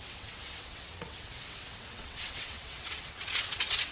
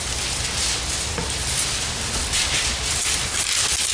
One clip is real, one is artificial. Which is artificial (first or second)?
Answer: first